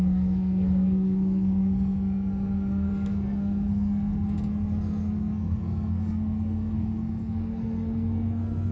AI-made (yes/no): yes